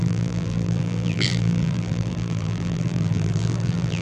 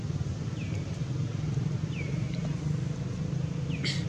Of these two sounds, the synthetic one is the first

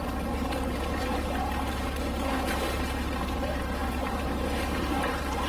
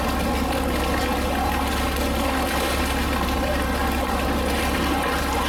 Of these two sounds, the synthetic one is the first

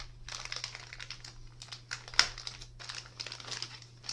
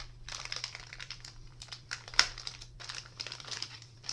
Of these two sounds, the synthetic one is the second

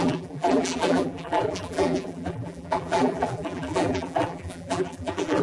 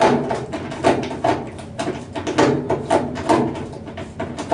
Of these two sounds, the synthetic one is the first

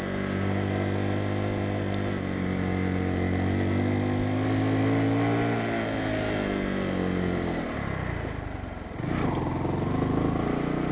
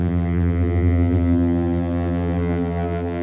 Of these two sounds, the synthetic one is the second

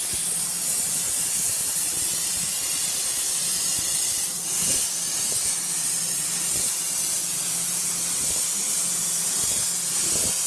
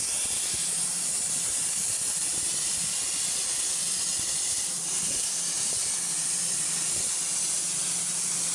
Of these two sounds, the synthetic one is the second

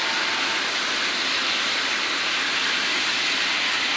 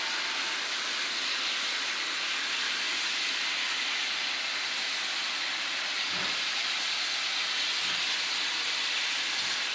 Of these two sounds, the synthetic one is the first